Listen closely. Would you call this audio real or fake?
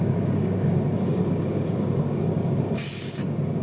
fake